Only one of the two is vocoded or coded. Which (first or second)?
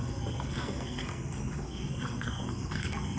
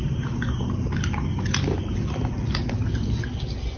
first